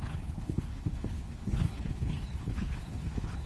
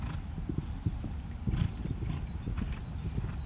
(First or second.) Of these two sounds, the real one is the second